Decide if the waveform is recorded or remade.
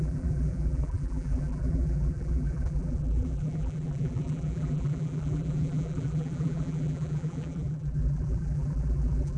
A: remade